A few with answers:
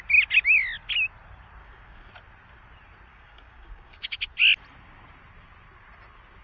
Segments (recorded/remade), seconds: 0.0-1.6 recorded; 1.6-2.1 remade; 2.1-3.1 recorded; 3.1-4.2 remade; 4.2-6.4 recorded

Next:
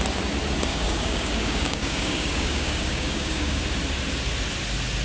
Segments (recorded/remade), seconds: 0.0-0.7 recorded; 0.7-3.6 remade; 3.6-5.0 recorded